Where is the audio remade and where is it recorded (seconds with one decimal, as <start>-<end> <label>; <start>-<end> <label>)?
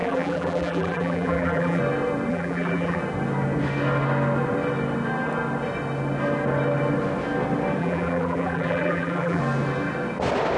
0.0-1.8 remade; 1.8-2.3 recorded; 2.3-3.0 remade; 3.0-7.8 recorded; 7.8-9.4 remade; 9.4-10.6 recorded